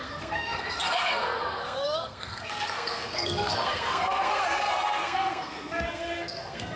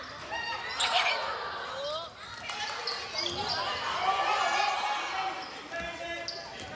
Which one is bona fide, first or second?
second